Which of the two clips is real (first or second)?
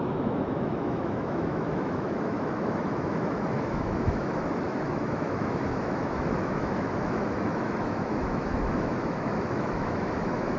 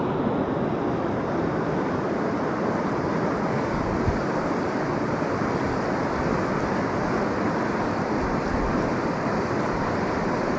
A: second